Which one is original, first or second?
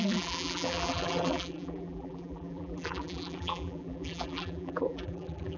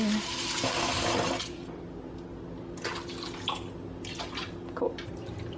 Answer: second